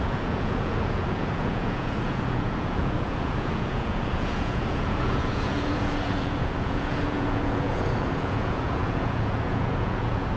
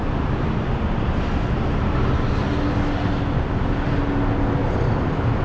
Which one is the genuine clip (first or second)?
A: second